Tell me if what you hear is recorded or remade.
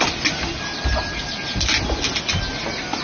recorded